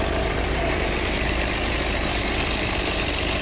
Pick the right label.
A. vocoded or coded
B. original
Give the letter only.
A